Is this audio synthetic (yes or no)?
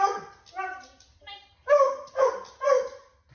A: no